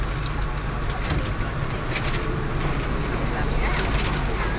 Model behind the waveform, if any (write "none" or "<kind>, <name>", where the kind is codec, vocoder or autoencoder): none